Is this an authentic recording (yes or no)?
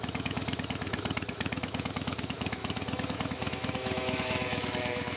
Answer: no